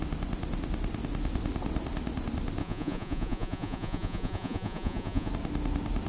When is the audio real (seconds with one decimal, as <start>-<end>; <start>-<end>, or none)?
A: 0.0-2.6; 5.3-6.1